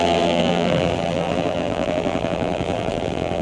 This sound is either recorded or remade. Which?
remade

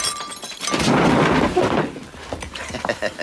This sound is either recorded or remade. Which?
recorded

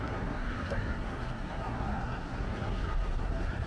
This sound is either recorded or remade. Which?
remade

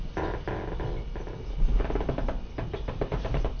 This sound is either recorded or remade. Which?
recorded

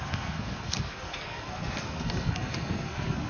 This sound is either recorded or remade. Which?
remade